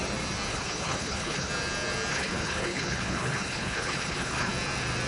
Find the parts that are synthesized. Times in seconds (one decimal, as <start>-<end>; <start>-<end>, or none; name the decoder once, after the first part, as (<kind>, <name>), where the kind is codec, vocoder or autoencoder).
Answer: 0.5-1.5 (codec, HILCodec); 2.1-4.5